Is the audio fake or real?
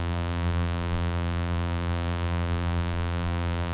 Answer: fake